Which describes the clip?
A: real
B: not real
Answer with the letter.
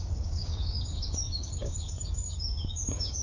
B